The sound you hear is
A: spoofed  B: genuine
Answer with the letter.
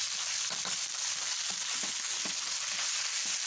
B